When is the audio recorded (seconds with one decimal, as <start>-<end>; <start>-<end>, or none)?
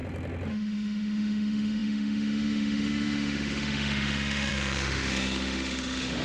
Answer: 0.0-0.5